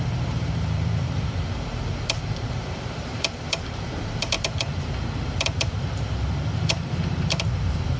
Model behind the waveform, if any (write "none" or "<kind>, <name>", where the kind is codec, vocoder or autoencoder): vocoder, BigVGAN v2